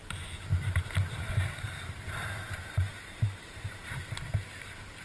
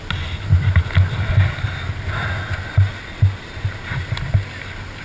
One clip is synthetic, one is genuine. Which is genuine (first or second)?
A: second